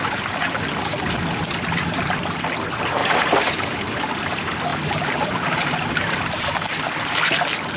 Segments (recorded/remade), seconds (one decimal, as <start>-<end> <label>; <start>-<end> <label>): 0.0-3.0 recorded; 3.0-4.2 remade; 4.2-4.7 recorded; 4.7-6.8 remade; 6.8-7.8 recorded